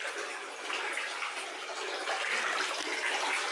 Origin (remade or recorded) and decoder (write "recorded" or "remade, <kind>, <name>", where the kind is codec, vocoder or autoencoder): recorded